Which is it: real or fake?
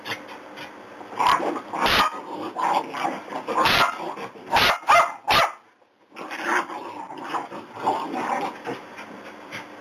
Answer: real